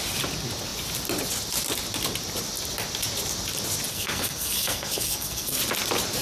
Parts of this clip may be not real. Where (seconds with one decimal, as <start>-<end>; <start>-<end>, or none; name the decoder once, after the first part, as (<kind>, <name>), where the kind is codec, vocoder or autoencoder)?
3.9-5.6 (codec, SNAC)